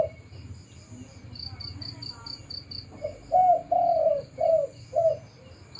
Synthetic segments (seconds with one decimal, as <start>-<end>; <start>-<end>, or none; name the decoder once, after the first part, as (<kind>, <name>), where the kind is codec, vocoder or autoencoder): 3.4-4.5 (vocoder, BigVGAN v2)